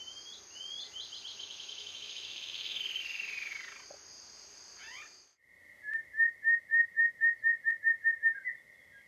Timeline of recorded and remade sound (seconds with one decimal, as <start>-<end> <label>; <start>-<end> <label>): 0.0-1.3 recorded; 1.3-2.8 remade; 2.8-9.1 recorded